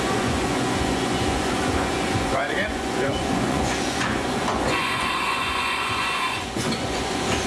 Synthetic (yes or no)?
yes